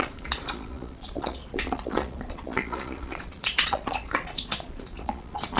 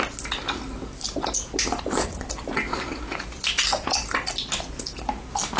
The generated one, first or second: first